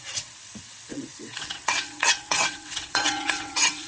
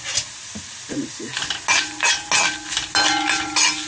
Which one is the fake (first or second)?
first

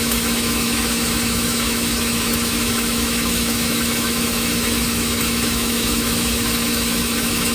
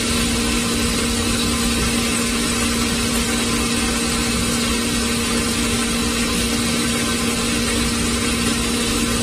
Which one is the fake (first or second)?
first